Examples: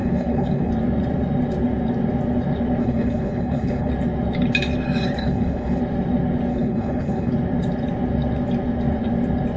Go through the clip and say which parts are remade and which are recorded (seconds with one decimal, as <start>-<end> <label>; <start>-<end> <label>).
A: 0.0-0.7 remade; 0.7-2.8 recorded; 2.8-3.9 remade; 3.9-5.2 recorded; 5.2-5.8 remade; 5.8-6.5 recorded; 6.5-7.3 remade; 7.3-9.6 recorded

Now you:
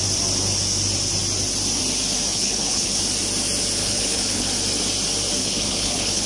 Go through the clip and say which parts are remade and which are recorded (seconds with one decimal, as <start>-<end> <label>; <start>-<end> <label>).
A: 0.0-2.3 recorded; 2.3-3.0 remade; 3.0-3.8 recorded; 3.8-4.5 remade; 4.5-5.4 recorded; 5.4-6.3 remade

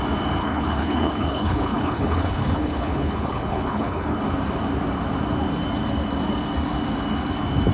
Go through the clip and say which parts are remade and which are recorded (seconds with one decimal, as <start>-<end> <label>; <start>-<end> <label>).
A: 0.0-0.4 recorded; 0.4-4.2 remade; 4.2-7.7 recorded

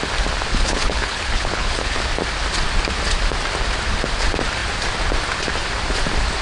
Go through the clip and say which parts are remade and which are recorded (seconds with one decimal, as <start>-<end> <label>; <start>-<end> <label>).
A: 0.0-0.5 recorded; 0.5-2.0 remade; 2.0-6.4 recorded

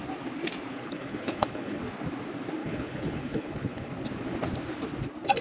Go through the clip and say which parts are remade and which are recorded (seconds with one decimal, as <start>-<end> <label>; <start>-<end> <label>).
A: 0.0-0.7 recorded; 0.7-1.8 remade; 1.8-2.6 recorded; 2.6-3.9 remade; 3.9-5.4 recorded

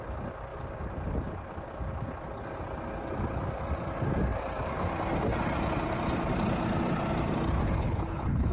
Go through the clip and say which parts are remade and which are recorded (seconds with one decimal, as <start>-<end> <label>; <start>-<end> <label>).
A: 0.0-7.8 recorded; 7.8-8.5 remade